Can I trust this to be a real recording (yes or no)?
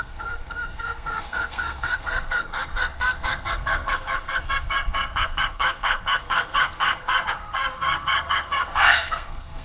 no